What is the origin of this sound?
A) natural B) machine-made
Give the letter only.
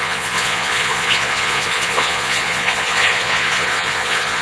B